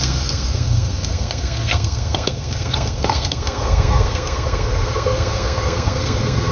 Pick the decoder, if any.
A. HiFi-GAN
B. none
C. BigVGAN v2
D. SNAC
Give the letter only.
D